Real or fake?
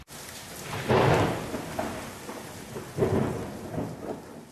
real